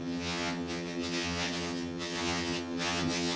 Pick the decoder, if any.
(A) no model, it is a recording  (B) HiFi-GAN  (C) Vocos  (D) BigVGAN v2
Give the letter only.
B